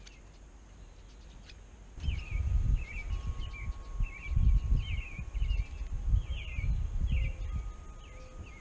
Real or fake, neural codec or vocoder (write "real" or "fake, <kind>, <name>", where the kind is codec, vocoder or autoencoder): real